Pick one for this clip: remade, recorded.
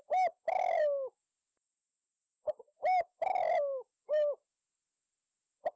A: remade